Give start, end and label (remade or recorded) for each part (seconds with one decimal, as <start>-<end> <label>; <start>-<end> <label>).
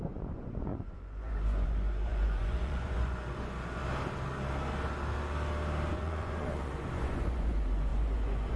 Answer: 0.0-3.8 remade; 3.8-5.9 recorded; 5.9-8.6 remade